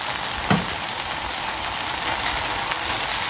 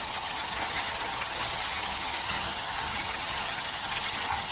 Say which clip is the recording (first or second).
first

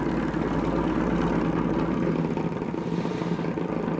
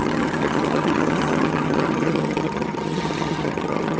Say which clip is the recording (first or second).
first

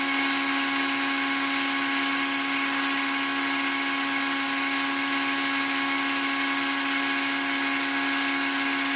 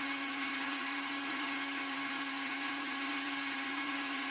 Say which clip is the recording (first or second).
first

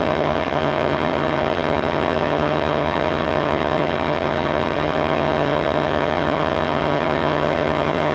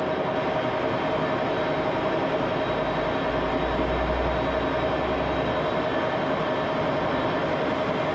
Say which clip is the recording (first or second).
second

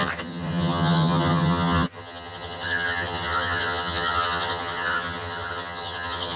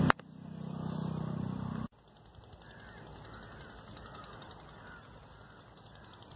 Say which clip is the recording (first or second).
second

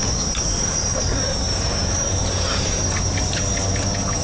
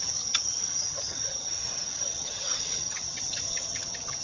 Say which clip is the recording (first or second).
first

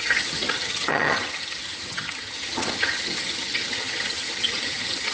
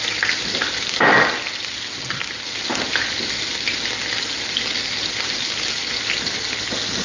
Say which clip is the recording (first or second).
second